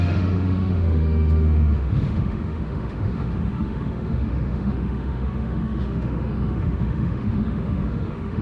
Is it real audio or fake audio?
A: fake